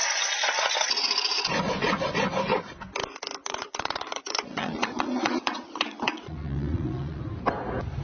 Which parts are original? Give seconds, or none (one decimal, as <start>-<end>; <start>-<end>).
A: 0.0-3.4; 7.2-8.0